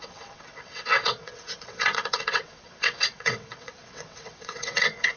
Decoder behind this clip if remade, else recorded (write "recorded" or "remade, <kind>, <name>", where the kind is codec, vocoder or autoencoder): remade, vocoder, WaveNeXt